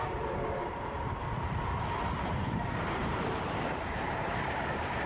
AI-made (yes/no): yes